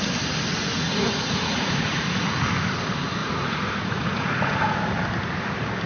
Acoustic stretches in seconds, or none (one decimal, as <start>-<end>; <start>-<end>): 0.0-0.5; 2.2-3.2; 4.8-5.9